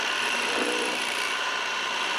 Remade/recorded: remade